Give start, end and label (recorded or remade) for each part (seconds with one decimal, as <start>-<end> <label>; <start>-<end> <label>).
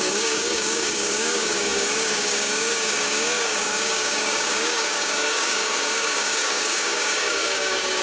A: 0.0-8.0 remade